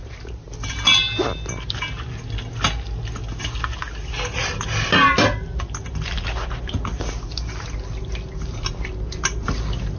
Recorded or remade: recorded